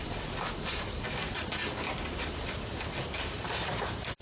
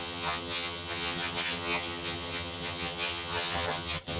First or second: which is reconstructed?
second